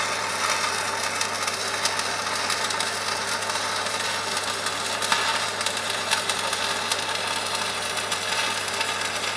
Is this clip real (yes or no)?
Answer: yes